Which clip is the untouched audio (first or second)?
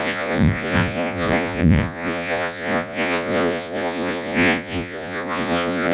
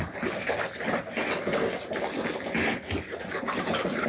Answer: second